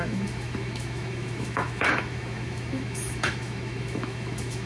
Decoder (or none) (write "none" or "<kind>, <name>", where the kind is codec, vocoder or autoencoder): autoencoder, DAC-VAE